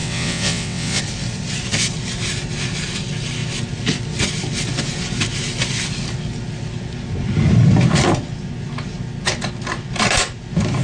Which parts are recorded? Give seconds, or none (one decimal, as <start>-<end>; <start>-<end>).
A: 1.0-10.8

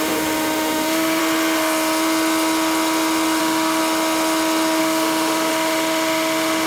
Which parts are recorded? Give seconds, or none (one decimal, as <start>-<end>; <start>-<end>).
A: 1.2-3.4; 3.8-4.8

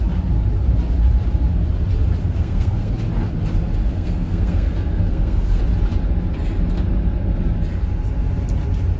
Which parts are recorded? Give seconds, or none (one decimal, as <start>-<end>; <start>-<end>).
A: 0.0-2.2; 2.9-3.9; 5.6-9.0

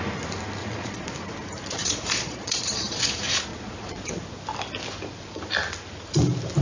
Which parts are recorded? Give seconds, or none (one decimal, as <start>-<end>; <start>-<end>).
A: 0.0-0.6; 1.2-1.8; 3.1-3.5; 4.2-6.6

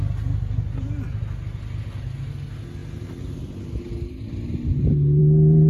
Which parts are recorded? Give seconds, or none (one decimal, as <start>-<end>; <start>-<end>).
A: 0.0-5.7

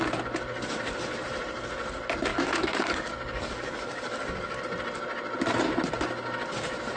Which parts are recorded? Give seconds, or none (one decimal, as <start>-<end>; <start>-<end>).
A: 0.0-2.3; 4.6-7.0

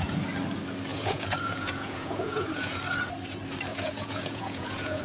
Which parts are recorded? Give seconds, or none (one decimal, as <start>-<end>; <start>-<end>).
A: 0.0-0.9; 2.8-3.7